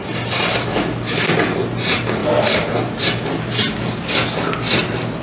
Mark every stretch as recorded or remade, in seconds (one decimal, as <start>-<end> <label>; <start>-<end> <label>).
0.0-0.5 recorded; 0.5-1.3 remade; 1.3-5.2 recorded